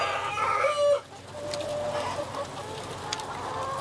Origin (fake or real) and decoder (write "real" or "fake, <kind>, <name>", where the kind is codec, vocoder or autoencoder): real